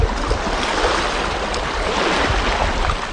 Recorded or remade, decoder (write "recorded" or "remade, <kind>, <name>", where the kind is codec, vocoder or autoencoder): recorded